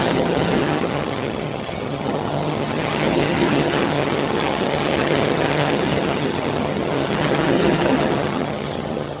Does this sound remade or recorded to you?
remade